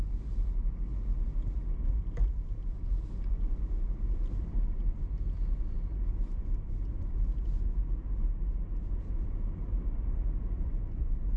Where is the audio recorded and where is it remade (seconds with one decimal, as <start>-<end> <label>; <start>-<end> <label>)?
0.0-11.4 remade